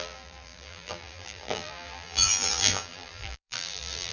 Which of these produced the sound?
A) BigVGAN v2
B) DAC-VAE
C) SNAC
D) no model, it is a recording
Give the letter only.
A